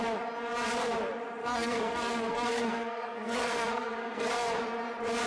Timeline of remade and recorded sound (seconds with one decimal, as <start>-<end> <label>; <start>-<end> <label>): 0.0-1.4 recorded; 1.4-4.6 remade; 4.6-5.3 recorded